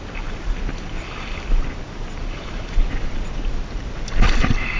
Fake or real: real